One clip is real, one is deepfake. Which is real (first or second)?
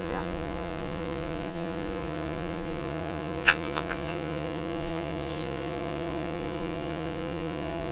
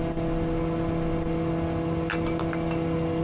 second